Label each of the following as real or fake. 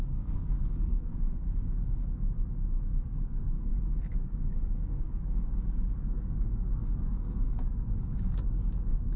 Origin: fake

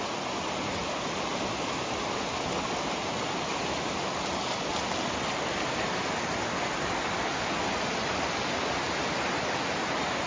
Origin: real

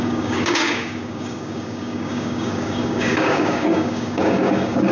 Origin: fake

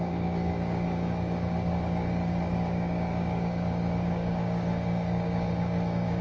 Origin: fake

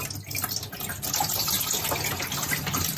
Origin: real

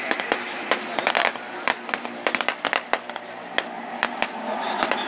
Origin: real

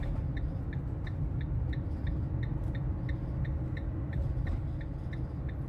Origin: real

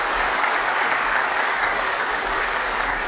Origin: fake